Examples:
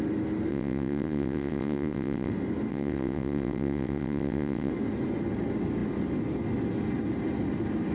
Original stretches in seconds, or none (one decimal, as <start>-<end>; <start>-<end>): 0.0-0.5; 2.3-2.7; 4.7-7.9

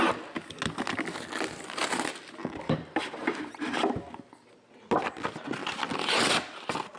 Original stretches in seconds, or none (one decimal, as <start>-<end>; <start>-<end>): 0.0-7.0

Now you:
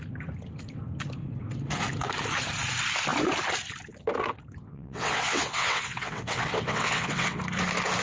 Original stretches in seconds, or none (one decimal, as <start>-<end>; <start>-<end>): 0.0-4.6; 7.4-8.0

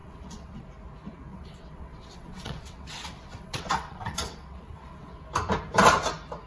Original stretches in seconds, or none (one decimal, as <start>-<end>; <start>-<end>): 0.6-1.3; 5.2-6.5

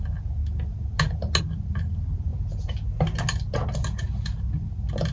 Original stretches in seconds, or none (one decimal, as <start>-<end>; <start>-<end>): 0.0-5.1

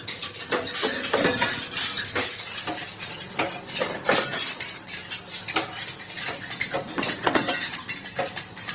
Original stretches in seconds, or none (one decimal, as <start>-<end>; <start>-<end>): 0.0-6.9; 7.5-8.7

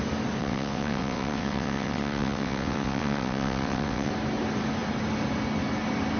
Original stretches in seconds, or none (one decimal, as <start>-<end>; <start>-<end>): 0.0-0.4; 4.1-6.2

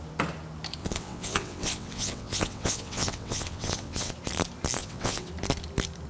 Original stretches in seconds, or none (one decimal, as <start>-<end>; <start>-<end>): 0.0-0.8; 4.1-4.8; 5.3-6.1